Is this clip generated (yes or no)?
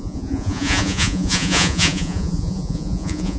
yes